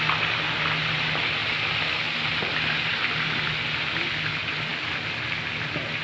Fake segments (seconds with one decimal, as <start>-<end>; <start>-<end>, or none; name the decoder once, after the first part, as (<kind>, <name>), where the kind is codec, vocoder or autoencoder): none

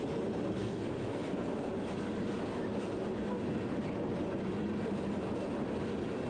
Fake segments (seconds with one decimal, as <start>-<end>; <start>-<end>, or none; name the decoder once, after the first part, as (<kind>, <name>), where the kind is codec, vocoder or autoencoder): 0.6-1.7 (codec, SNAC)

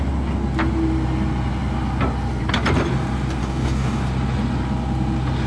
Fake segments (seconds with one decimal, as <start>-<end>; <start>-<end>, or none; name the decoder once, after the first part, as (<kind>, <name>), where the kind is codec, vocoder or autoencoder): 3.4-4.0 (codec, DAC)

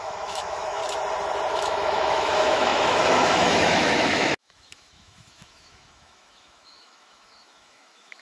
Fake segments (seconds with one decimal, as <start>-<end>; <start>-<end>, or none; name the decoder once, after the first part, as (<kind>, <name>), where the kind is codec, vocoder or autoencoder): 0.0-0.8 (autoencoder, DAC-VAE); 1.5-8.2

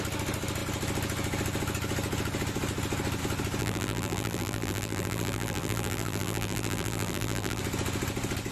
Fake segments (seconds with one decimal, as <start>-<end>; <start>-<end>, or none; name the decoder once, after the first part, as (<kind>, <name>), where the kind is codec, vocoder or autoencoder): 3.6-7.6 (vocoder, BigVGAN v2)

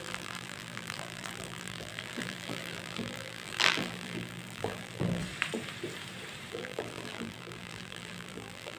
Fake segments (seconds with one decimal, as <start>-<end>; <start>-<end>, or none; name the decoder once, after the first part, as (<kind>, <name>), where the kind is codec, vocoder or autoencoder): 0.0-5.2 (vocoder, BigVGAN v2); 6.5-8.8